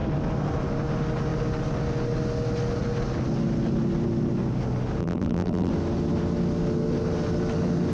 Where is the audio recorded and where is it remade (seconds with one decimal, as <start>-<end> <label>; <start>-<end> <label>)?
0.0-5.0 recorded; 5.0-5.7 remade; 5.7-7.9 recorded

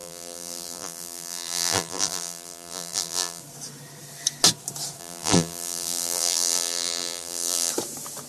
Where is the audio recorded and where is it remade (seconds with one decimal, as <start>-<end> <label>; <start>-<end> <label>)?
0.0-3.4 remade; 3.4-5.0 recorded; 5.0-7.7 remade; 7.7-8.3 recorded

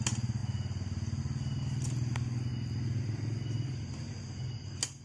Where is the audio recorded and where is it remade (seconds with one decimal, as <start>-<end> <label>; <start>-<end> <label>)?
0.0-5.0 recorded

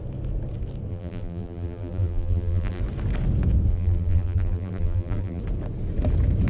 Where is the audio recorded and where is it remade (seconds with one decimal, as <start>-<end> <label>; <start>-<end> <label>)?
0.0-0.9 recorded; 0.9-2.8 remade; 2.8-3.7 recorded; 3.7-5.4 remade; 5.4-6.5 recorded

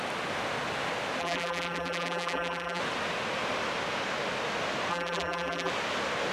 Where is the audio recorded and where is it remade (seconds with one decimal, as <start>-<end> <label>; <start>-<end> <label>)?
0.0-1.2 recorded; 1.2-2.8 remade; 2.8-4.9 recorded; 4.9-5.7 remade; 5.7-6.3 recorded

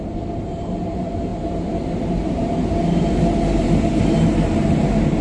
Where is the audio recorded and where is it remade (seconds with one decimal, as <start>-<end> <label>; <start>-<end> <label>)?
0.0-5.2 remade